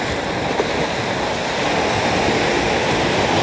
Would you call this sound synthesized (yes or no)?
no